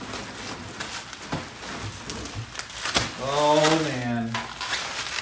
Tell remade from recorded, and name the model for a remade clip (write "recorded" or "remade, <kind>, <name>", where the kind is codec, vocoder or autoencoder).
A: recorded